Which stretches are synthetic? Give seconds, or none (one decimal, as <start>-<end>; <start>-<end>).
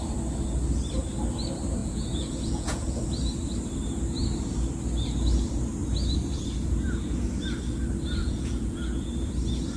1.8-3.0; 8.2-9.1